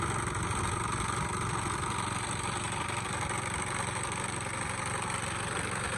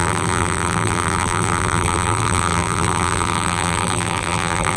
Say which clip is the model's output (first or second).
second